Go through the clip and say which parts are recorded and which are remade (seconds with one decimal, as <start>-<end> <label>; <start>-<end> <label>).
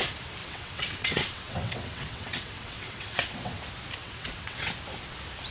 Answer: 0.0-0.4 recorded; 0.4-3.6 remade; 3.6-4.0 recorded; 4.0-4.7 remade; 4.7-5.5 recorded